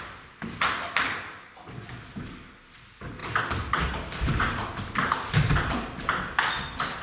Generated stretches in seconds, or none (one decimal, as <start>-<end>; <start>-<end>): none

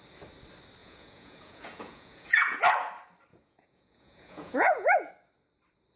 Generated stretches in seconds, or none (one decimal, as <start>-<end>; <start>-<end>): 0.8-2.6; 3.3-5.1

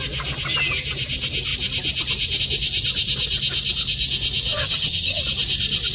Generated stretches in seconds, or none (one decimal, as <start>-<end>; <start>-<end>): 4.5-5.2

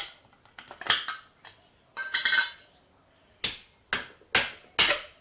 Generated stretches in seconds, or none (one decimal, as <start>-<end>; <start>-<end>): none

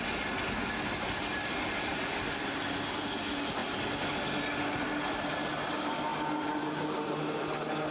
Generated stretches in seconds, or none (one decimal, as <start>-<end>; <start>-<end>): none

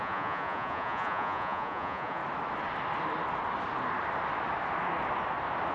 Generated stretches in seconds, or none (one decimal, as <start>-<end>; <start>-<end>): 0.0-2.2